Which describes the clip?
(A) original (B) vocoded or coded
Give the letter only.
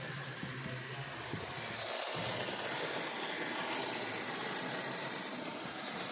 A